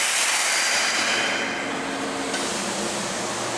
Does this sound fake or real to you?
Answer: real